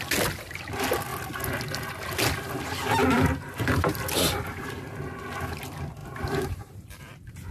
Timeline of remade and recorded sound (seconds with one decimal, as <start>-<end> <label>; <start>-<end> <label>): 0.0-3.0 recorded; 3.0-4.0 remade; 4.0-6.0 recorded; 6.0-7.0 remade; 7.0-7.5 recorded